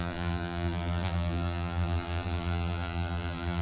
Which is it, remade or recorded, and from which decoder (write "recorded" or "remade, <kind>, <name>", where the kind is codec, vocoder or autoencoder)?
remade, vocoder, BigVGAN v2